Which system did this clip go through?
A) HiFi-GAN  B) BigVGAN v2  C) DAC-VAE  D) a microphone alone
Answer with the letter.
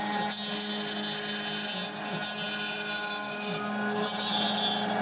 D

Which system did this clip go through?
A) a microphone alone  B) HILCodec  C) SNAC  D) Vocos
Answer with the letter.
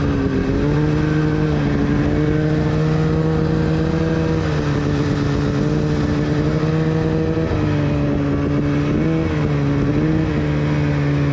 A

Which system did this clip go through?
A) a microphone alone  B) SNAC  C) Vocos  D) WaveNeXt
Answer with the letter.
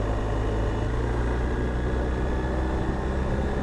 A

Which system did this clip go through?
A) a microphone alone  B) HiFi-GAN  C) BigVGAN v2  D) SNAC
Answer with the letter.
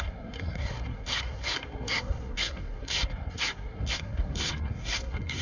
D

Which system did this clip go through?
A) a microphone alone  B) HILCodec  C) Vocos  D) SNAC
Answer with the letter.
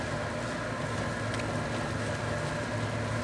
A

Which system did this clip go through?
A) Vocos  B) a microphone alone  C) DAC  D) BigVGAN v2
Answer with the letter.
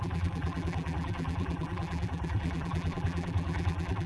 D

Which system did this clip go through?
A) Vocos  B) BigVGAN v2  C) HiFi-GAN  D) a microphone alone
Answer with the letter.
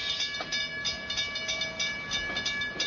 D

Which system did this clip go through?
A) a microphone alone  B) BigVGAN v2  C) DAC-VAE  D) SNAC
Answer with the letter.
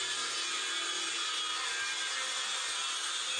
A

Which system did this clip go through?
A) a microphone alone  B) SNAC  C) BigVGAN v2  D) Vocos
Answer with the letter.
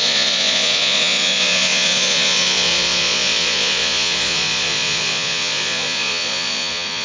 D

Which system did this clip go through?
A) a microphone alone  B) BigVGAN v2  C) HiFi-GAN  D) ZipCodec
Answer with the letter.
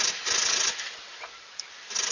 A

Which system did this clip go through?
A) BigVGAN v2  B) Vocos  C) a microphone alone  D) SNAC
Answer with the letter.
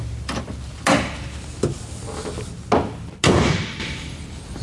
C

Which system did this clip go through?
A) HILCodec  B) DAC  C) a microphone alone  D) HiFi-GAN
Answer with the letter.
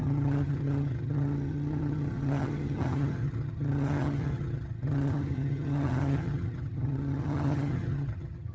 D